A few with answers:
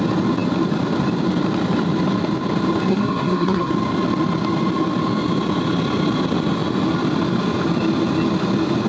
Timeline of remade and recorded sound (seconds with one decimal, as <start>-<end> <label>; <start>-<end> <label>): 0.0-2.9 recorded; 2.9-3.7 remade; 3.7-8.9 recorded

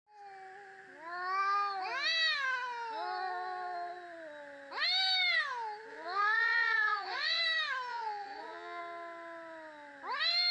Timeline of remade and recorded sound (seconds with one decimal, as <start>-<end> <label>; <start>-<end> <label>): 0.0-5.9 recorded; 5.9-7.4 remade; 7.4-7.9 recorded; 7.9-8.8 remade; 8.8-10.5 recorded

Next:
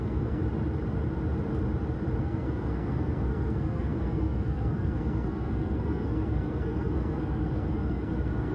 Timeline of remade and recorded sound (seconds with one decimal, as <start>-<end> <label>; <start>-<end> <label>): 0.0-0.4 remade; 0.4-2.2 recorded; 2.2-8.5 remade

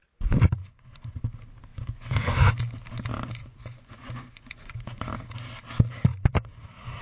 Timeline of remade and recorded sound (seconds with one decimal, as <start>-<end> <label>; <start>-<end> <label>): 0.0-0.6 recorded; 0.6-1.2 remade; 1.2-1.7 recorded; 1.7-2.5 remade; 2.5-3.4 recorded; 3.4-5.1 remade; 5.1-7.0 recorded

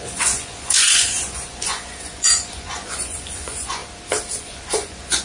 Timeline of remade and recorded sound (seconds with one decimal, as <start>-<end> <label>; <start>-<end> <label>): 0.0-3.8 remade; 3.8-4.4 recorded; 4.4-5.2 remade

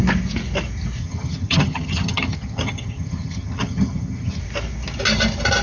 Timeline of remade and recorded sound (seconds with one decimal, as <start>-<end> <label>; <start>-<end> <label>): 0.0-1.0 recorded; 1.0-4.4 remade; 4.4-5.6 recorded

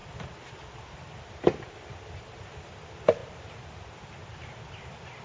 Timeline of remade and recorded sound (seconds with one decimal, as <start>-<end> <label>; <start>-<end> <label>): 0.0-5.2 recorded

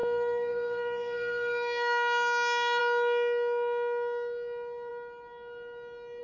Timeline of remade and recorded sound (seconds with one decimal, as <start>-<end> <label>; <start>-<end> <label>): 0.0-2.8 remade; 2.8-6.2 recorded